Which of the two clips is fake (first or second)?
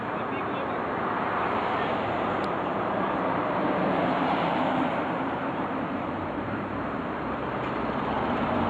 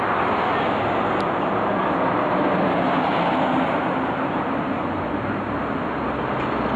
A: first